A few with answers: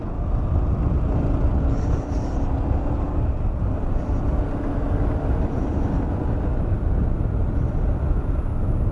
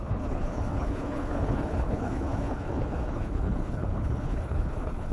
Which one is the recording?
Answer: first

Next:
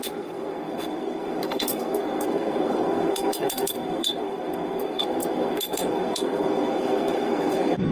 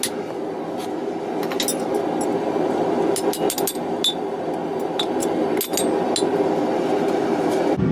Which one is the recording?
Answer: second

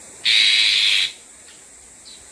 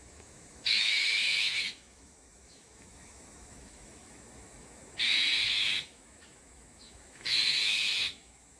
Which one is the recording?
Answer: first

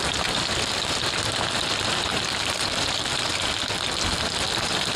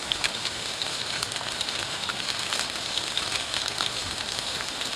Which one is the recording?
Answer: first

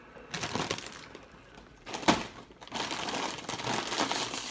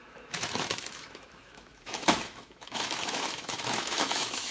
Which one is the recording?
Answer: first